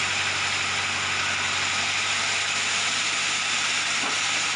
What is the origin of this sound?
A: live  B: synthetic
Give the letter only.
A